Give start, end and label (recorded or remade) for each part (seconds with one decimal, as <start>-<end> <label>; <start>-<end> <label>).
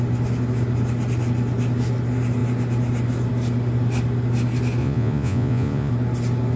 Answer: 0.0-4.8 recorded; 4.8-5.9 remade; 5.9-6.6 recorded